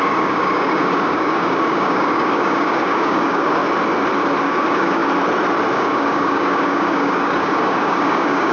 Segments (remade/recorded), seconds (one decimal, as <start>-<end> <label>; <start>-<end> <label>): 0.0-3.6 remade; 3.6-4.4 recorded; 4.4-5.0 remade; 5.0-5.7 recorded; 5.7-8.5 remade

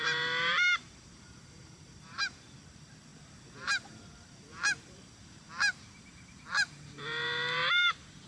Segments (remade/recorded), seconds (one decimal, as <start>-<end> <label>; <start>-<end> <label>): 0.0-8.3 remade

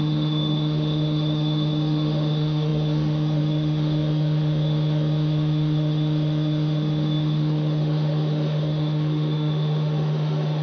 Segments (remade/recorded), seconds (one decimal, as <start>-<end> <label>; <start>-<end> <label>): 0.0-10.6 remade

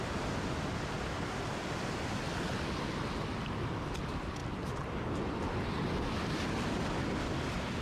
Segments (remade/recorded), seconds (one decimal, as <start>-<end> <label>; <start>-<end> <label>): 0.0-7.8 recorded

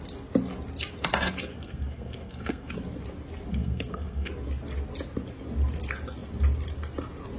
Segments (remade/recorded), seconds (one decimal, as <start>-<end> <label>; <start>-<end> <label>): 0.0-1.5 recorded; 1.5-2.7 remade; 2.7-3.5 recorded; 3.5-4.3 remade; 4.3-7.4 recorded

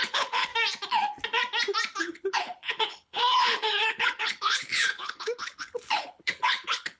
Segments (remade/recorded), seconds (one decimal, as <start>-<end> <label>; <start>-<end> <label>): 0.0-0.5 remade; 0.5-2.0 recorded; 2.0-7.0 remade

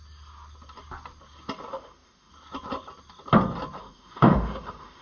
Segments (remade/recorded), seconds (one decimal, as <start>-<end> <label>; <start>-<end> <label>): 0.0-1.7 recorded; 1.7-2.3 remade; 2.3-3.8 recorded; 3.8-5.0 remade